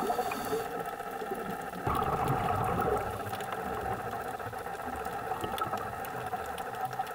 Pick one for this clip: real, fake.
real